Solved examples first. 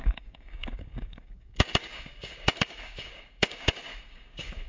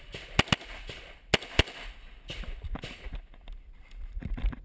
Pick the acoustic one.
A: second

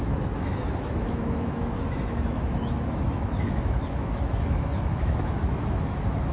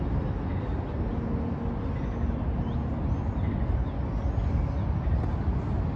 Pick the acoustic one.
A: second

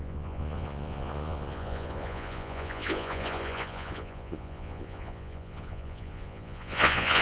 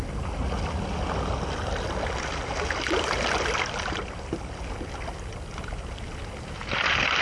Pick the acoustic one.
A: second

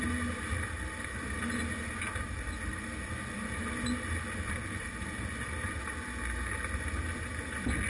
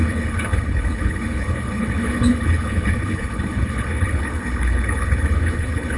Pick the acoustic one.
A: first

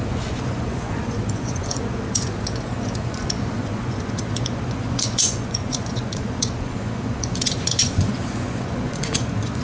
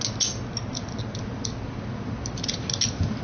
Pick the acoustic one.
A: second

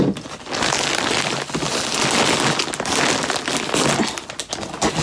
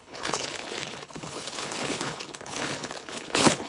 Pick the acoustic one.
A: first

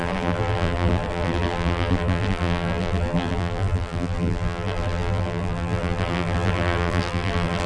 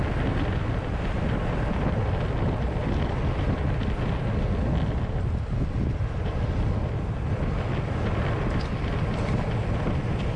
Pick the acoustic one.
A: second